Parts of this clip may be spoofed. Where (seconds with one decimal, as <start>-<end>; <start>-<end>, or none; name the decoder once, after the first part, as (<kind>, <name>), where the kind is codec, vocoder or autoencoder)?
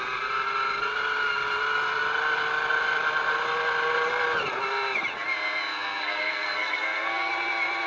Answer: 5.7-7.3 (codec, SNAC)